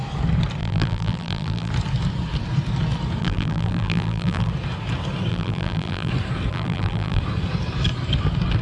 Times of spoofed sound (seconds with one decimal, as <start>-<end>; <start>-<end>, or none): 0.6-1.7; 3.2-4.5; 5.3-6.1; 6.5-7.2